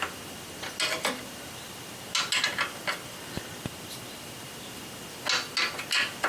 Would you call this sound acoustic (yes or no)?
yes